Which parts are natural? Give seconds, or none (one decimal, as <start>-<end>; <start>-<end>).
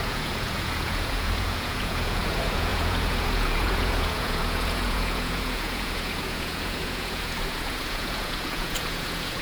none